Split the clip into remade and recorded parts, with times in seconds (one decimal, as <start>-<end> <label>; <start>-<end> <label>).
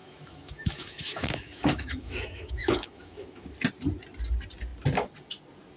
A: 0.0-3.5 remade; 3.5-5.8 recorded